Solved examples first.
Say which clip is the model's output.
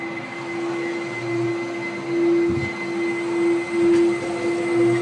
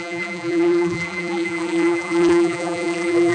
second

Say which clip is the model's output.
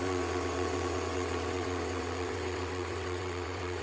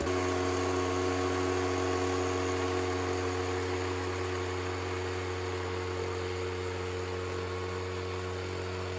first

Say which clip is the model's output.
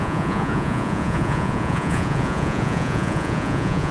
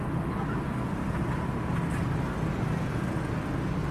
first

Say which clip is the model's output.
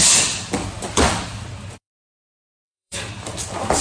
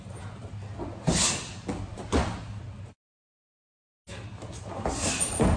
first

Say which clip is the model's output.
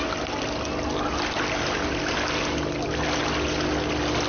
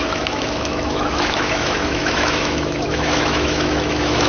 second